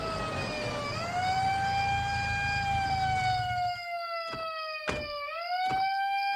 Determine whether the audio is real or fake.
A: real